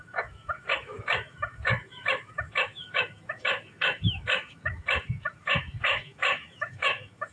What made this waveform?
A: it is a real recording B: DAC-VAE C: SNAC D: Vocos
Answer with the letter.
B